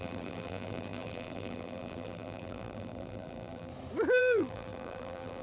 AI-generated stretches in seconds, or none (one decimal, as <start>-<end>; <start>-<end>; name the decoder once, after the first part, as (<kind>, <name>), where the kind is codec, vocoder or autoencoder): 0.0-3.7 (vocoder, BigVGAN v2); 4.2-5.4